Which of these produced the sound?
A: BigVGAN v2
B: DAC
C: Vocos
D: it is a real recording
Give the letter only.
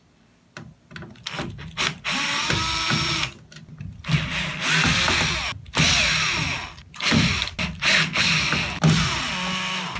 D